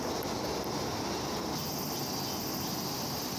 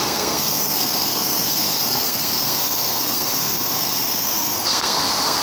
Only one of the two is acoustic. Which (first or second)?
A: first